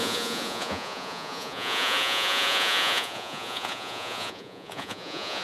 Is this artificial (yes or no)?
yes